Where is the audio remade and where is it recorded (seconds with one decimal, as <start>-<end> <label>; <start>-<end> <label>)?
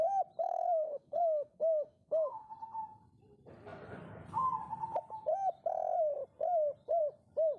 0.0-0.4 recorded; 0.4-2.5 remade; 2.5-7.6 recorded